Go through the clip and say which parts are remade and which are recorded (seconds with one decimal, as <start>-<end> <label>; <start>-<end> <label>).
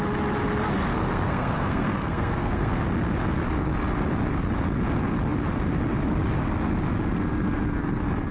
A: 0.0-0.9 recorded; 0.9-2.8 remade; 2.8-8.3 recorded